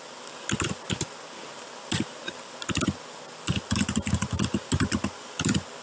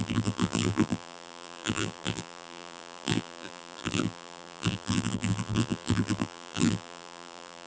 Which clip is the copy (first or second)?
second